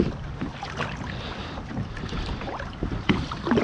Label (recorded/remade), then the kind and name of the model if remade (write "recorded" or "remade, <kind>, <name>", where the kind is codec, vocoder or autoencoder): recorded